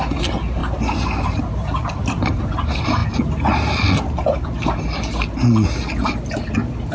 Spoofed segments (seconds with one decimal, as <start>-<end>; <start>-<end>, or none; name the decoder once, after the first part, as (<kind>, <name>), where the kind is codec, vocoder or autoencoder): 0.6-2.4 (vocoder, BigVGAN v2)